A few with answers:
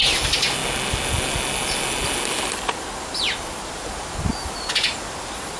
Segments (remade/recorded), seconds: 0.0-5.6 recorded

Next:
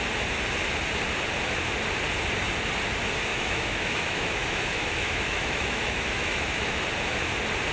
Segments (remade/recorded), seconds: 0.0-3.3 recorded; 3.3-6.8 remade; 6.8-7.7 recorded

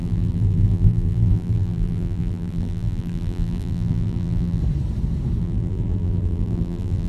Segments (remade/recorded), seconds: 0.0-4.6 remade; 4.6-5.4 recorded; 5.4-7.1 remade

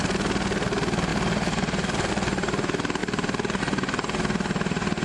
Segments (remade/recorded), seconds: 0.0-1.1 recorded; 1.1-2.1 remade; 2.1-5.0 recorded

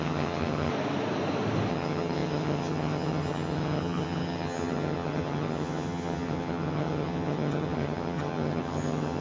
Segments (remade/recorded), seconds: 0.0-0.7 remade; 0.7-1.7 recorded; 1.7-9.2 remade

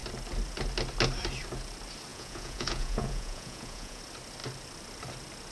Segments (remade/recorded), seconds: 0.0-2.1 recorded; 2.1-4.0 remade; 4.0-5.5 recorded

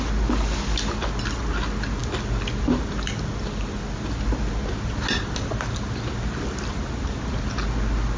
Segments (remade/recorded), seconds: 0.0-8.2 recorded

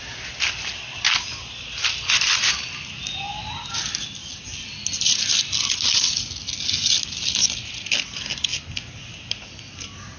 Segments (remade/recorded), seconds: 0.0-10.2 recorded